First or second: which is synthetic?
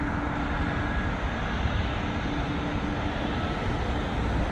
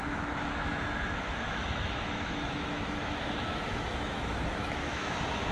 second